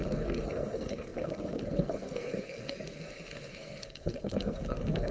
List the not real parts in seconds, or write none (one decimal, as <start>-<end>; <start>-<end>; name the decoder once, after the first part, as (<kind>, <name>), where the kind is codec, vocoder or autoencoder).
0.0-5.1 (codec, SNAC)